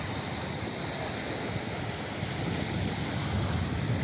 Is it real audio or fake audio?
real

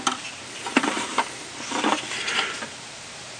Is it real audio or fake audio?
real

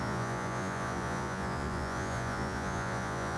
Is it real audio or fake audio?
fake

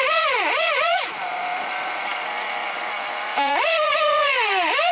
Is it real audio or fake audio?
fake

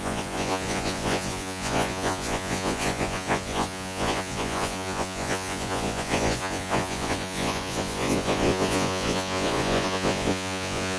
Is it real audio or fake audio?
fake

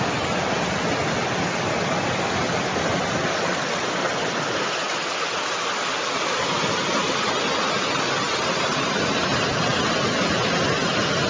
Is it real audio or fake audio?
real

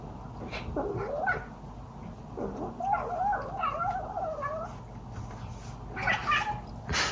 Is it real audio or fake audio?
real